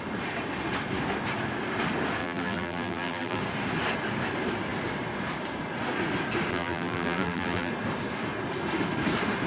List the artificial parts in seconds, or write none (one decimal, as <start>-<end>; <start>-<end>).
2.2-3.4; 6.5-7.7